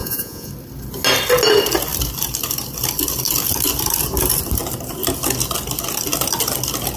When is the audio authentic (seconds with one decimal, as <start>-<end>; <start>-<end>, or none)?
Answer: 0.5-7.0